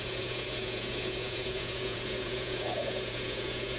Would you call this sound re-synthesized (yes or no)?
yes